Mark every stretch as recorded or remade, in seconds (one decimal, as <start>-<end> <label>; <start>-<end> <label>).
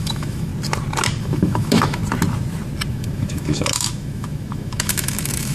0.0-0.5 remade; 0.5-1.2 recorded; 1.2-2.0 remade; 2.0-2.9 recorded; 2.9-5.5 remade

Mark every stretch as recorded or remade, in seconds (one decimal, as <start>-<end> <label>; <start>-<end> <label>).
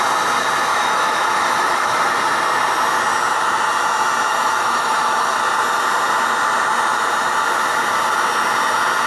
0.0-0.7 recorded; 0.7-2.0 remade; 2.0-4.3 recorded; 4.3-5.4 remade; 5.4-9.1 recorded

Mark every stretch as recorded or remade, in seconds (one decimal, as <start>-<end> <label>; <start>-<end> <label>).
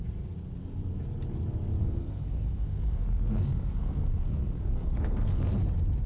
0.0-1.8 recorded; 1.8-5.5 remade; 5.5-6.1 recorded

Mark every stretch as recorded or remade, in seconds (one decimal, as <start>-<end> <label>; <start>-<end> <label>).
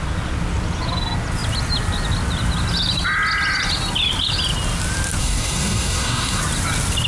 0.0-5.2 recorded; 5.2-6.4 remade; 6.4-7.1 recorded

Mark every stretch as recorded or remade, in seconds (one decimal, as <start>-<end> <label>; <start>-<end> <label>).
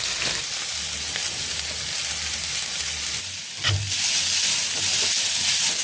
0.0-5.8 recorded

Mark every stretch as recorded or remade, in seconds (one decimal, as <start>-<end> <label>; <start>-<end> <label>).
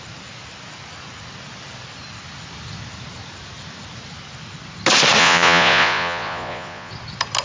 0.0-5.2 recorded; 5.2-6.9 remade; 6.9-7.4 recorded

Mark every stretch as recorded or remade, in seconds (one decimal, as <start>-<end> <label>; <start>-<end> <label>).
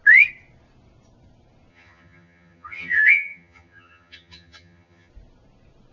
0.0-1.7 recorded; 1.7-5.1 remade; 5.1-5.9 recorded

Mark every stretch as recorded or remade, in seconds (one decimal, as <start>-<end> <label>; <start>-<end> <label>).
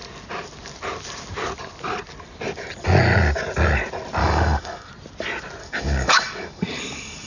0.0-4.2 recorded; 4.2-4.9 remade; 4.9-5.6 recorded; 5.6-7.3 remade